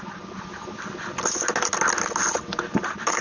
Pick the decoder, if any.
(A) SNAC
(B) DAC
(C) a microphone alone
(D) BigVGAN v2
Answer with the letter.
C